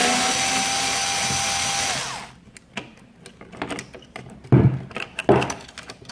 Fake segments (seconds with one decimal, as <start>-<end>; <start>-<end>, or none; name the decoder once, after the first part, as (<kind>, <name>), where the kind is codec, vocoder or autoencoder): none